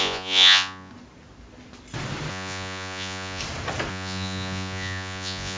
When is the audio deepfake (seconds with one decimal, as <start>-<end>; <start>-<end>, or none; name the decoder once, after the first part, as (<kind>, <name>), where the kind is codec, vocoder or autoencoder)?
0.0-0.9 (vocoder, Vocos); 2.3-3.4; 3.9-5.6